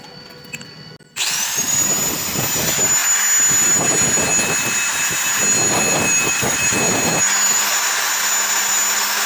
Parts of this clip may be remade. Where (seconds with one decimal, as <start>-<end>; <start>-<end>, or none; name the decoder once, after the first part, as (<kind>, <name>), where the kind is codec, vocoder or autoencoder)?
none